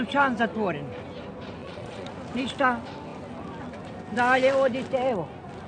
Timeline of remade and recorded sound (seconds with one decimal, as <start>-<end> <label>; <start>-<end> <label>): 0.0-1.6 recorded; 1.6-2.1 remade; 2.1-5.7 recorded